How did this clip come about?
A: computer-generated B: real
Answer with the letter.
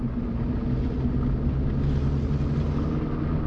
B